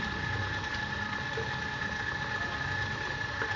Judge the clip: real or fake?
real